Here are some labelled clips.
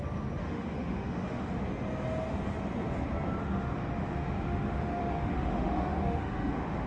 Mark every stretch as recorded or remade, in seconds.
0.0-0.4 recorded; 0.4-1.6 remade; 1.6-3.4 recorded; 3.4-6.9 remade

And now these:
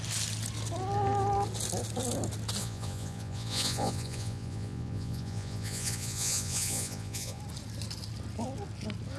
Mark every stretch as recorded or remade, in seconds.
0.0-2.6 recorded; 2.6-7.4 remade; 7.4-9.2 recorded